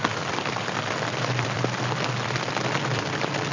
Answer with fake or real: fake